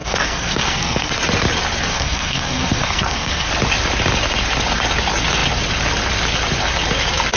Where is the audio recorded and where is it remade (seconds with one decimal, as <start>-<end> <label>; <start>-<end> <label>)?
0.0-1.1 remade; 1.1-1.9 recorded; 1.9-3.5 remade; 3.5-7.4 recorded